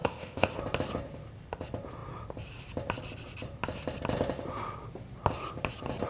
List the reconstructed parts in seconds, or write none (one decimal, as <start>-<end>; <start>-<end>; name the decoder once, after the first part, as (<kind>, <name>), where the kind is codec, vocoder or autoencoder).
0.0-0.6 (codec, ZipCodec)